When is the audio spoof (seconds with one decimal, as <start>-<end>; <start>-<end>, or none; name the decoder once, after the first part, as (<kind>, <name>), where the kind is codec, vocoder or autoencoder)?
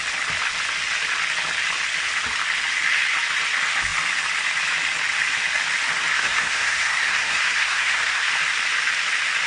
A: 6.1-8.3 (codec, SNAC)